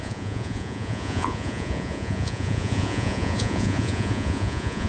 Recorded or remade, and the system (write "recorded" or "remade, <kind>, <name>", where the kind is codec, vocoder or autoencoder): remade, vocoder, Vocos